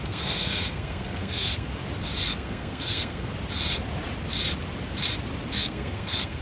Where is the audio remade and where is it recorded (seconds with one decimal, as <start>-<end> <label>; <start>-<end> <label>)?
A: 0.0-1.7 remade; 1.7-2.3 recorded; 2.3-3.3 remade; 3.3-5.5 recorded; 5.5-6.4 remade